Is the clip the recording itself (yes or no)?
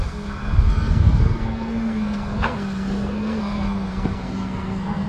no